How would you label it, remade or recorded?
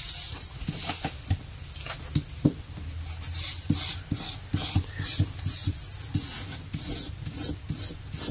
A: recorded